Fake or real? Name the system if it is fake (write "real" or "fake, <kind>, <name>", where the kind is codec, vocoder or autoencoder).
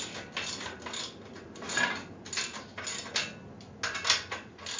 real